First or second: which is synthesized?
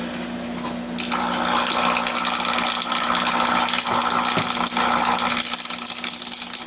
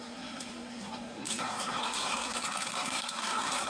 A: second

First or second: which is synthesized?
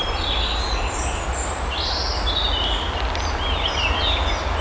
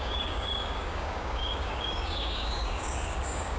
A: second